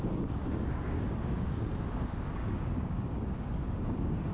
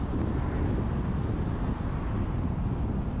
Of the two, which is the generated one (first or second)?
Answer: first